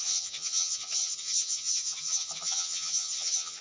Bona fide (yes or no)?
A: no